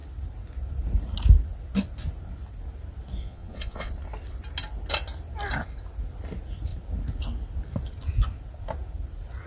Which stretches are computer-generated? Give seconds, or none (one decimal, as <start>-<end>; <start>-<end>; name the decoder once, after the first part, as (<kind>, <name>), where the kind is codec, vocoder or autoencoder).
3.2-3.9 (vocoder, Vocos)